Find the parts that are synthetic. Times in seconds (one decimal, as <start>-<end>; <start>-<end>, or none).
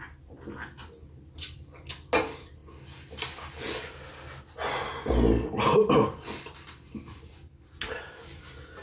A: none